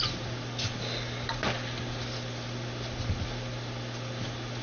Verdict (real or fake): real